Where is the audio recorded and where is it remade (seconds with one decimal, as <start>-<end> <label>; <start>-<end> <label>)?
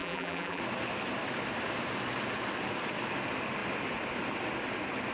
0.0-0.6 remade; 0.6-5.1 recorded